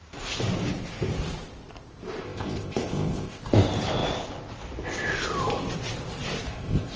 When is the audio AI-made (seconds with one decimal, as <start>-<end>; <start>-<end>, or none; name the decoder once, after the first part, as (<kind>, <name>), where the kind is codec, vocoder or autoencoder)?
2.2-3.4 (codec, ZipCodec); 6.5-7.0